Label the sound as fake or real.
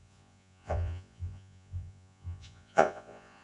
fake